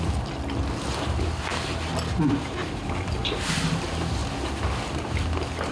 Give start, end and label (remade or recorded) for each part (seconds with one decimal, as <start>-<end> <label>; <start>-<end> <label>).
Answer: 0.0-5.7 recorded